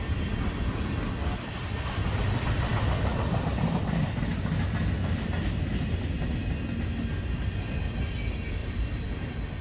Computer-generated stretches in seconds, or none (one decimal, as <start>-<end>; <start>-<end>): none